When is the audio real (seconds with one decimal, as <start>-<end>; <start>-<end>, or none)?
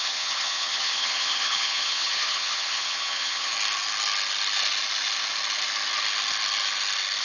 3.5-7.2